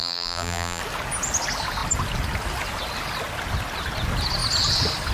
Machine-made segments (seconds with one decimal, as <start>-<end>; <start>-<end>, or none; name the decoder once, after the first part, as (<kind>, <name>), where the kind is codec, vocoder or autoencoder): 0.0-0.8 (vocoder, BigVGAN v2)